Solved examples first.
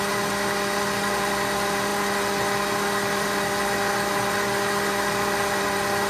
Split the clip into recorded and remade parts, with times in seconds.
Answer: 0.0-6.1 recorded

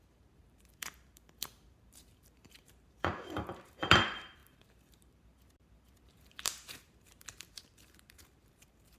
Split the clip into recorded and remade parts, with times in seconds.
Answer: 0.0-9.0 remade

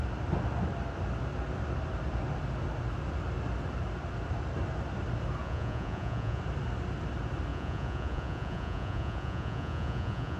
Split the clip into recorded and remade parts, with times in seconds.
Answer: 0.0-5.4 recorded; 5.4-6.4 remade; 6.4-7.5 recorded; 7.5-10.4 remade

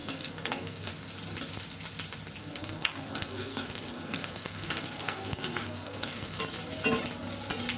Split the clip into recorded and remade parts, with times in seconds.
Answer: 0.0-0.9 remade; 0.9-2.4 recorded; 2.4-6.4 remade; 6.4-7.8 recorded

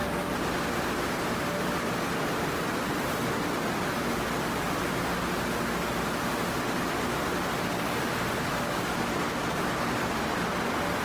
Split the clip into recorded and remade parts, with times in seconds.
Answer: 0.0-11.0 recorded

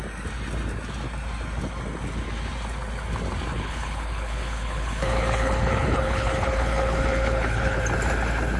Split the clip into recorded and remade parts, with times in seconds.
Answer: 0.0-3.5 recorded; 3.5-7.8 remade; 7.8-8.6 recorded

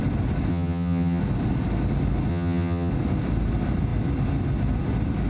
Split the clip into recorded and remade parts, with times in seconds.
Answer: 0.0-0.5 recorded; 0.5-1.2 remade; 1.2-2.3 recorded; 2.3-2.9 remade; 2.9-5.3 recorded